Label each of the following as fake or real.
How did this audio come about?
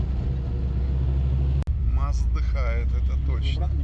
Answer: real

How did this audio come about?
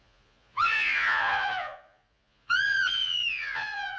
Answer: fake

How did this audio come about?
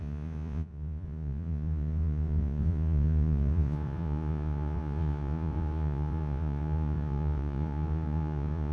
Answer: fake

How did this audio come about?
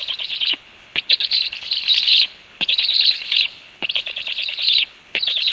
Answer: fake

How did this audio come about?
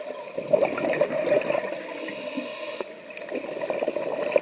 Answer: real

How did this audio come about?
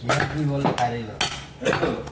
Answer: real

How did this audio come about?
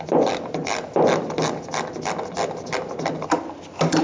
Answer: real